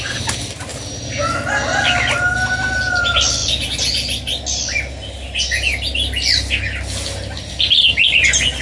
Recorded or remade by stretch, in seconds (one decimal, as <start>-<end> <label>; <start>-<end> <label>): 0.0-8.6 recorded